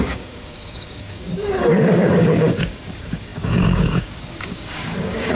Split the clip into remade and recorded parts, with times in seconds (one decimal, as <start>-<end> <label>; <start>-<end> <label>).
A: 0.0-5.3 remade